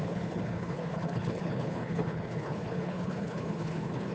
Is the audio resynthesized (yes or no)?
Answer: yes